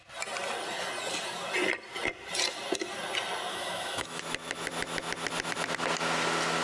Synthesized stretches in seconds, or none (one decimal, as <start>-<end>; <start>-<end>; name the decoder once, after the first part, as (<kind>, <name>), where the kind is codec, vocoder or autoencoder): 3.5-4.2 (autoencoder, DAC-VAE)